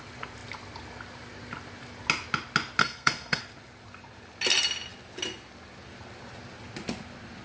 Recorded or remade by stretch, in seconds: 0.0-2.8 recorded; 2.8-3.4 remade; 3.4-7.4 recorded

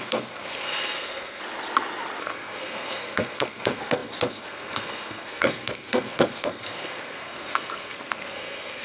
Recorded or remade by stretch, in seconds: 0.0-1.4 remade; 1.4-2.2 recorded; 2.2-8.8 remade

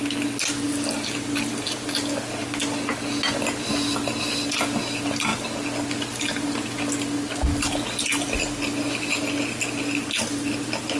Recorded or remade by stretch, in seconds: 0.0-11.0 recorded

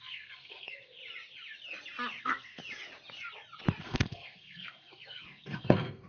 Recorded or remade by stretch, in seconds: 0.0-1.0 remade; 1.0-2.2 recorded; 2.2-2.6 remade; 2.6-3.8 recorded; 3.8-6.1 remade

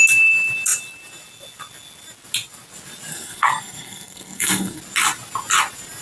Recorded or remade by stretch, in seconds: 0.0-3.1 recorded; 3.1-4.8 remade; 4.8-6.0 recorded